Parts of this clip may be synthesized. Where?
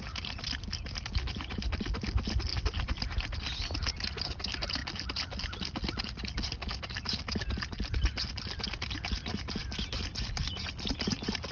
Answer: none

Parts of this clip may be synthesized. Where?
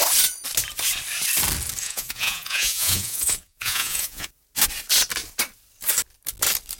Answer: 1.8-4.3 (vocoder, Vocos)